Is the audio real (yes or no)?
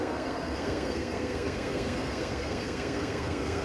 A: no